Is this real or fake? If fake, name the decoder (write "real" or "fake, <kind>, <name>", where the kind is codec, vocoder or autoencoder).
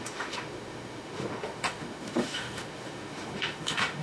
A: fake, autoencoder, DAC-VAE